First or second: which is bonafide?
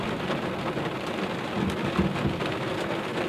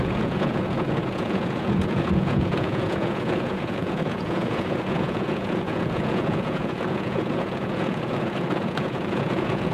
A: first